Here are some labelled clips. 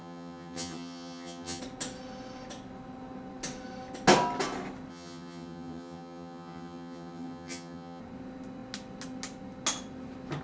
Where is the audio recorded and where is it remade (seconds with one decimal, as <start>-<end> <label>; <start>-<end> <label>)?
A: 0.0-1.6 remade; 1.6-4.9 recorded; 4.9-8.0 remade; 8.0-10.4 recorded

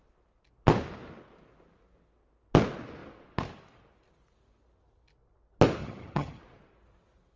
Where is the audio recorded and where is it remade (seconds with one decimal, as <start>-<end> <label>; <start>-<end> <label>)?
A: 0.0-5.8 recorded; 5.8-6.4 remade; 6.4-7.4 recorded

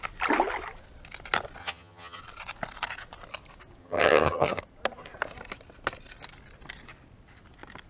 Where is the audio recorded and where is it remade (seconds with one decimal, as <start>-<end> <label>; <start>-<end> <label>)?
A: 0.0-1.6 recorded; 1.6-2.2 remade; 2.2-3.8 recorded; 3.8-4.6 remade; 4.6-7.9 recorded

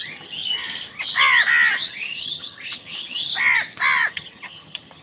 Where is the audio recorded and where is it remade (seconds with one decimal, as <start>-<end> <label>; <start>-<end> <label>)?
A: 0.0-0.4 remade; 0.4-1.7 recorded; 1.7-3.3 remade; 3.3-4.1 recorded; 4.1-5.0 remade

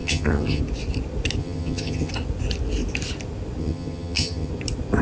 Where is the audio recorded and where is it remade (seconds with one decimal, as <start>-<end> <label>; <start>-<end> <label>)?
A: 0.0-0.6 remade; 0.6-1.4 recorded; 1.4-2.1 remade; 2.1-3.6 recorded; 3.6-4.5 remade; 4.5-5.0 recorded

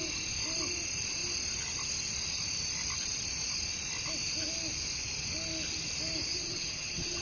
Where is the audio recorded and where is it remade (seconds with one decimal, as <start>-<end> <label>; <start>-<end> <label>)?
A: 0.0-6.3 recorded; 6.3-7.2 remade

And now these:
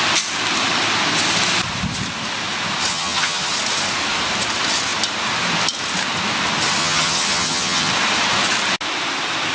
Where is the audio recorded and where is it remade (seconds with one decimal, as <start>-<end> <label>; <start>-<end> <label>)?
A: 0.0-2.9 recorded; 2.9-3.5 remade; 3.5-6.8 recorded; 6.8-7.9 remade; 7.9-9.5 recorded